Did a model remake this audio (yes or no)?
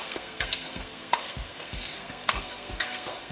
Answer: yes